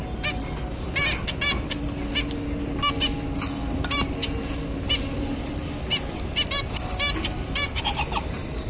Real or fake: real